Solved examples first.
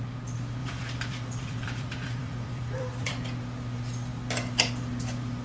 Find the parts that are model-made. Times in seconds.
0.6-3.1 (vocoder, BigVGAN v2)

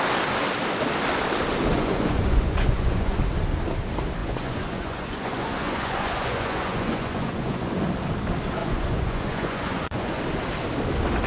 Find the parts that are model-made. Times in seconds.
1.7-3.2 (vocoder, Vocos); 4.2-7.7; 8.6-10.2

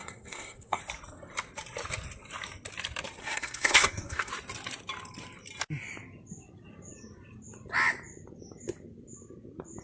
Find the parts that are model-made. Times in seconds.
0.0-0.8 (codec, SNAC); 3.2-4.3

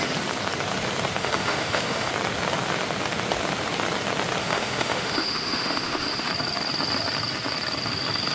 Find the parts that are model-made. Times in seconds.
1.2-2.1 (autoencoder, DAC-VAE); 4.4-6.3

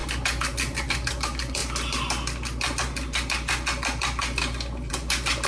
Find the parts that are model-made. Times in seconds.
none

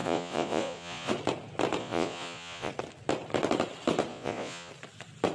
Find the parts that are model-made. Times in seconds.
0.0-1.1 (vocoder, Vocos); 1.8-2.7; 4.1-4.7

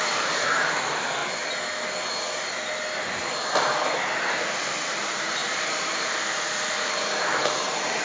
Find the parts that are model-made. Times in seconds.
0.0-1.2 (vocoder, BigVGAN v2); 4.3-8.0

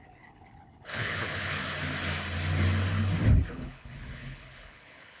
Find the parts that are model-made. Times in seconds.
0.0-1.6 (codec, HILCodec); 3.5-5.2